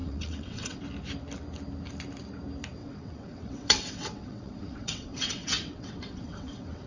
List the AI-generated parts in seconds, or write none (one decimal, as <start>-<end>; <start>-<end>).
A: 0.0-0.8; 2.8-6.9